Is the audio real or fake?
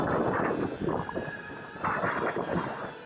real